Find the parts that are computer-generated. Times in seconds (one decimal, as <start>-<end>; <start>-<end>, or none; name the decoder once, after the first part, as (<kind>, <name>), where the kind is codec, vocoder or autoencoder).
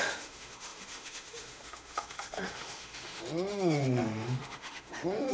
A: 0.0-5.3 (autoencoder, DAC-VAE)